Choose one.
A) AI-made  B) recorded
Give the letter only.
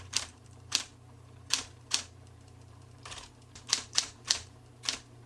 A